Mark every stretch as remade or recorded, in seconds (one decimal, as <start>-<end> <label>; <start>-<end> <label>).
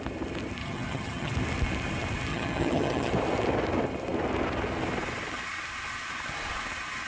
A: 0.0-0.6 recorded; 0.6-1.3 remade; 1.3-2.3 recorded; 2.3-3.1 remade; 3.1-7.1 recorded